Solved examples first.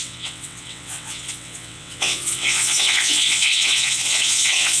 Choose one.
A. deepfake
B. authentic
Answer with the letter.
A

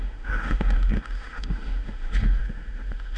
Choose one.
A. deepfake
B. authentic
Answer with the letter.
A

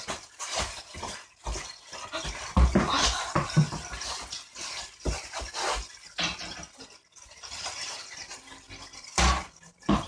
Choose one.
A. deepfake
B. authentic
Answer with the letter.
B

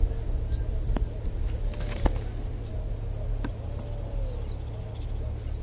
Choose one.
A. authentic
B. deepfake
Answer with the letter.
A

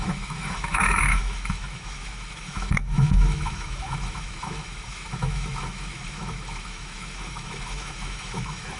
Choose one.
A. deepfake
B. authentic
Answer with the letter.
A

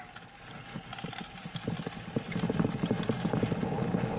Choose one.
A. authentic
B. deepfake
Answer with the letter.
A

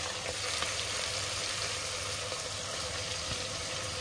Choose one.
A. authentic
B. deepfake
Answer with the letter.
A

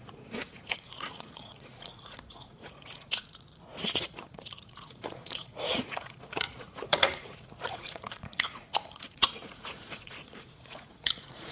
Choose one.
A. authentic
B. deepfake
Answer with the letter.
B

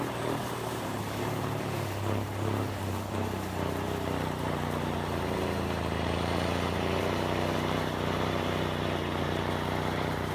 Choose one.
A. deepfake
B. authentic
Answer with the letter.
A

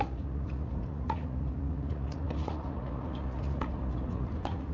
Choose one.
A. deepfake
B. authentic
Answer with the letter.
A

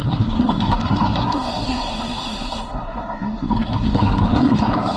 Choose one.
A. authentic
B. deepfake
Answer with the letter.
B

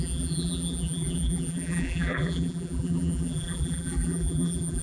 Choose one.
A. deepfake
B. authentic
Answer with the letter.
A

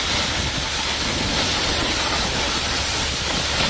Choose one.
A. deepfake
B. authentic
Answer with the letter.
B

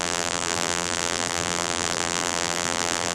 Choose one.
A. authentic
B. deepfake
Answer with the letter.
B